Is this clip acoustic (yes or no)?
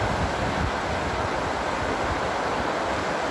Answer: yes